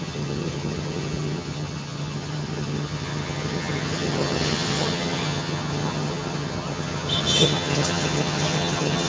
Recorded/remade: remade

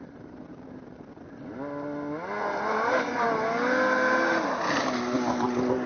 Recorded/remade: recorded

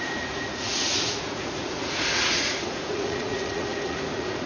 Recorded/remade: remade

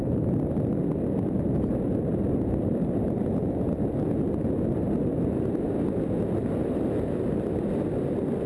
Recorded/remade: remade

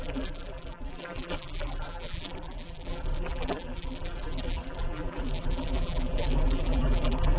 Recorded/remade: remade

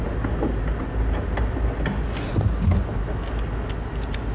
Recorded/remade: recorded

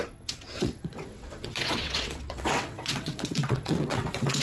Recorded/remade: remade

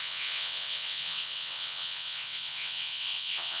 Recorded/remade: remade